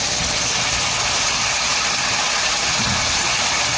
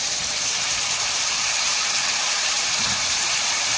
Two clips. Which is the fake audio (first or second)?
second